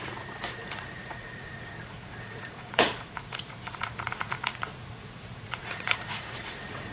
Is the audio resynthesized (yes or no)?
yes